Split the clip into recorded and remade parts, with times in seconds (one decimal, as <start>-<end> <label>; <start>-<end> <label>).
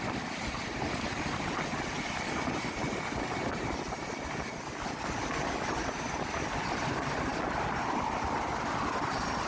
0.0-9.5 recorded